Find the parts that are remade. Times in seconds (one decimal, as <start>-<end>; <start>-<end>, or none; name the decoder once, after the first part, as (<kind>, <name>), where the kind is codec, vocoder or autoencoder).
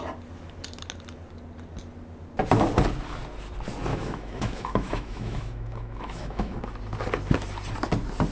3.9-6.6 (autoencoder, DAC-VAE)